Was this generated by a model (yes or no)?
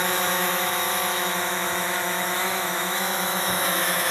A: yes